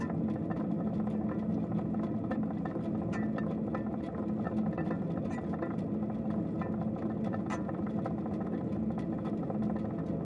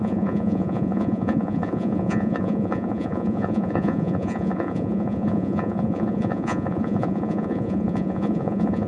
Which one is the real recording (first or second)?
first